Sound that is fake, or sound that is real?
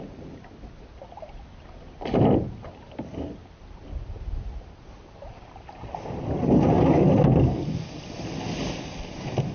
real